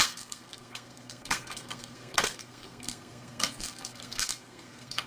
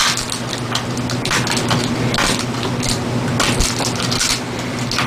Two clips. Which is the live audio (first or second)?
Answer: second